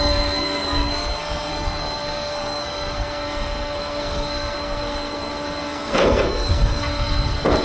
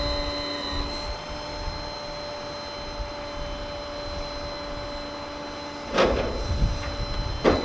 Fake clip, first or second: first